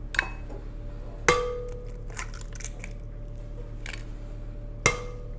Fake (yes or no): no